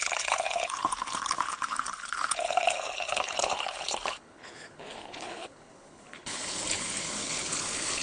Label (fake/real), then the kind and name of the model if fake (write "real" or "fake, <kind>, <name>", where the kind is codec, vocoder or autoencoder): fake, codec, HILCodec